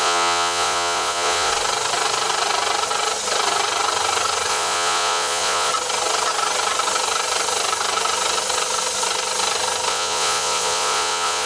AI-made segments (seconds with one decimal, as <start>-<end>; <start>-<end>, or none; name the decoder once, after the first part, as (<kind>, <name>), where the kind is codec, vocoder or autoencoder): 0.0-1.5 (vocoder, Vocos); 4.5-5.7; 9.9-11.5